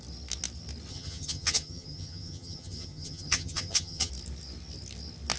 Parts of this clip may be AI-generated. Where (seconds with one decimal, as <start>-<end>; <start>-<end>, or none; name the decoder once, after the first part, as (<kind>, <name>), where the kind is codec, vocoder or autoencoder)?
0.9-4.1 (vocoder, HiFi-GAN)

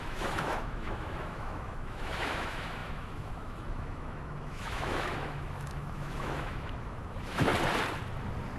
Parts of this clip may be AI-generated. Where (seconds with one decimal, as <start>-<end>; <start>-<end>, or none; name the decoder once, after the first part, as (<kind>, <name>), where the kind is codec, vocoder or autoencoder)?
0.0-7.5 (autoencoder, DAC-VAE)

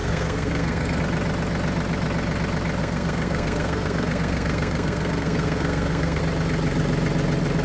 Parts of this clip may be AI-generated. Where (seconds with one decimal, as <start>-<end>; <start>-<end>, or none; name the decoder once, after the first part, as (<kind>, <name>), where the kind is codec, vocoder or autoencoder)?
0.0-1.0 (codec, SNAC); 2.8-6.2

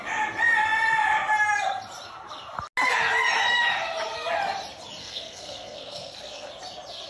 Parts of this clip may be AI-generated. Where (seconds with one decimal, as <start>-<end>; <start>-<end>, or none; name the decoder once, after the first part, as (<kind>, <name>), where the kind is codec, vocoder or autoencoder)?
5.0-6.5 (codec, SNAC)

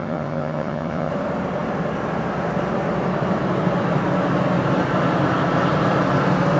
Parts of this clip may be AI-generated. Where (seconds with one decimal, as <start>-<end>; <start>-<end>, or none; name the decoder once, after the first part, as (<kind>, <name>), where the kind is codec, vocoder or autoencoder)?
0.0-1.1 (vocoder, HiFi-GAN)